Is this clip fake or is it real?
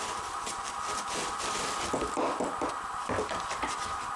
fake